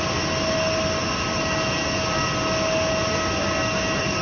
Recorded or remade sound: recorded